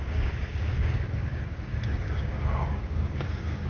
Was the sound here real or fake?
fake